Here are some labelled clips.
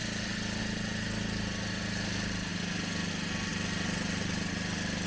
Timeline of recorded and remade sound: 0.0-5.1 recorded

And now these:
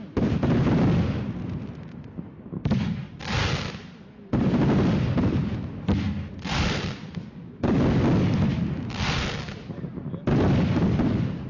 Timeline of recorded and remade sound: 0.0-11.5 recorded